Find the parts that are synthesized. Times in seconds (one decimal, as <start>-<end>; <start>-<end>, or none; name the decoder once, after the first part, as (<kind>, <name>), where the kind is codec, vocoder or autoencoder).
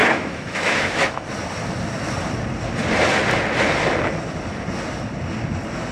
0.0-1.3 (autoencoder, DAC-VAE)